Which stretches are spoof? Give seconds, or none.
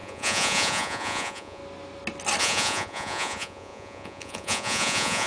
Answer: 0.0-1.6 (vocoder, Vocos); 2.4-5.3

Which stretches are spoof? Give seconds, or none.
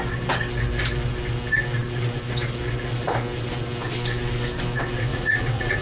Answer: 5.1-5.8 (vocoder, Vocos)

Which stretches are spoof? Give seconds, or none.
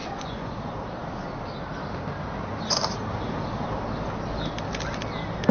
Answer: 0.0-0.5 (vocoder, Vocos)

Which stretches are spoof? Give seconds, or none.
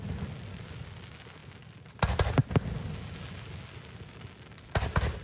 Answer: none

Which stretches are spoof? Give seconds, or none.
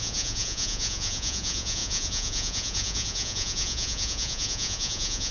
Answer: 0.0-5.3 (vocoder, Vocos)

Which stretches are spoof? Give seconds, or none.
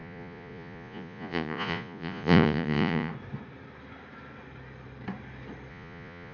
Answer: 0.0-3.1 (vocoder, Vocos); 5.7-6.3